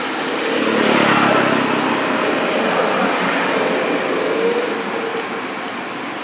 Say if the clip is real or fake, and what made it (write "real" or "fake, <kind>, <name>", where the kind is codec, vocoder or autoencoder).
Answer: real